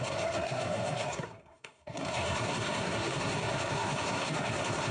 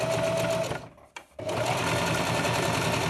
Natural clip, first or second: second